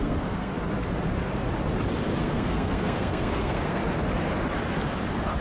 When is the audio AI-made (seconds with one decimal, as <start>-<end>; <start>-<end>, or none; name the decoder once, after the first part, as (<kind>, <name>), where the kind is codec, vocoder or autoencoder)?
0.0-0.5 (codec, SNAC); 2.2-3.8